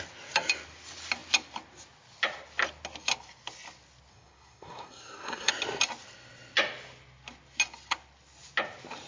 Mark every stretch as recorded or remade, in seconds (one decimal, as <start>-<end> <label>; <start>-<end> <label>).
0.0-4.1 recorded; 4.1-5.5 remade; 5.5-9.1 recorded